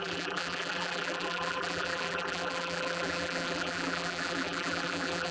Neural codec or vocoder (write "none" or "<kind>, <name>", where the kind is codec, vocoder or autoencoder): vocoder, BigVGAN v2